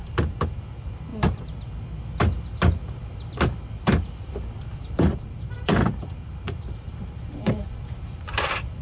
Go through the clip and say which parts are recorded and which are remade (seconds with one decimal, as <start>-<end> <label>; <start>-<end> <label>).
0.0-1.1 remade; 1.1-4.8 recorded; 4.8-8.8 remade

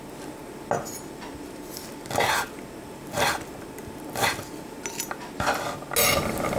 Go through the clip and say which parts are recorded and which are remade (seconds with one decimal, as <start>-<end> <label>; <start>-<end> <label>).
0.0-6.6 recorded

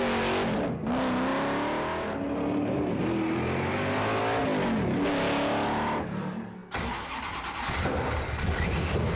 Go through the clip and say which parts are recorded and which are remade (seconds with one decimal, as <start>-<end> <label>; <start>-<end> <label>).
0.0-9.2 recorded

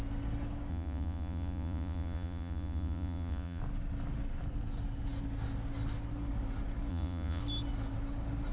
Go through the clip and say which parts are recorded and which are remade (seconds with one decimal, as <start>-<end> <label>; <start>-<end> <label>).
0.0-0.7 recorded; 0.7-3.6 remade; 3.6-6.9 recorded; 6.9-7.4 remade; 7.4-8.5 recorded

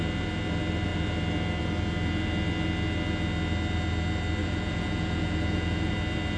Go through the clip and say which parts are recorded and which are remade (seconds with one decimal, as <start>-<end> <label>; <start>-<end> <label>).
0.0-4.4 recorded; 4.4-5.9 remade; 5.9-6.4 recorded

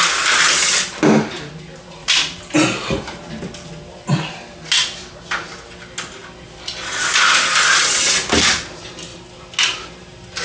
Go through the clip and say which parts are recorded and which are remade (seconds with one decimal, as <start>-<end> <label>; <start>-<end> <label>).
0.0-10.4 recorded

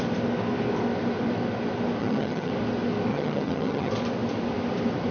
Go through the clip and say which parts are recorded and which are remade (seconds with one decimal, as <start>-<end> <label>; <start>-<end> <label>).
0.0-2.0 recorded; 2.0-2.5 remade; 2.5-3.1 recorded; 3.1-3.9 remade; 3.9-5.1 recorded

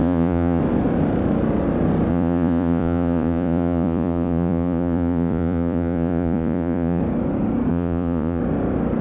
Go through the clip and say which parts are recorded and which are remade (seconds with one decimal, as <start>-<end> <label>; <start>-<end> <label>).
0.0-0.6 remade; 0.6-2.1 recorded; 2.1-7.0 remade; 7.0-7.7 recorded; 7.7-8.4 remade; 8.4-9.0 recorded